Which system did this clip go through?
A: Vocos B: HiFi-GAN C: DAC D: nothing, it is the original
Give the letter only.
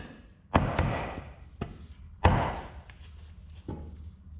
D